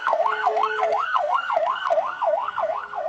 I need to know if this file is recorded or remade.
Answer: remade